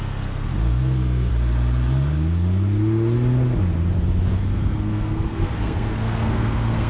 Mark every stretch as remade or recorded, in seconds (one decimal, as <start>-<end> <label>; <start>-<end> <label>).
0.0-1.3 remade; 1.3-4.3 recorded; 4.3-6.9 remade